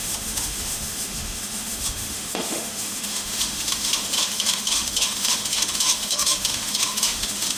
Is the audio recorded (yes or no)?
no